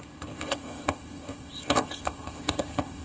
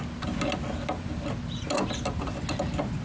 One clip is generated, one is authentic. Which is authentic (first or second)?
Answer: second